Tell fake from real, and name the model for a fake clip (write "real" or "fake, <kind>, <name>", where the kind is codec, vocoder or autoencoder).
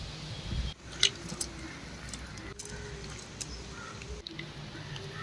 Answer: real